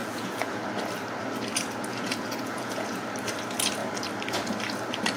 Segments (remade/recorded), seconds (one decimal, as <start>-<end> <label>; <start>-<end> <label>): 0.0-0.6 remade; 0.6-1.9 recorded; 1.9-3.0 remade; 3.0-5.2 recorded